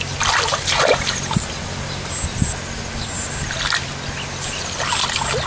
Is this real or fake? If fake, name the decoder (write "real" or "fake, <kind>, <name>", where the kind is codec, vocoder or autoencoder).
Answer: real